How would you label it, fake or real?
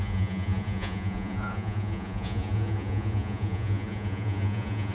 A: fake